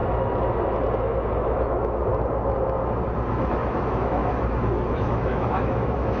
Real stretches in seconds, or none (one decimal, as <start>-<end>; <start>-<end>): 0.0-1.0; 2.1-3.3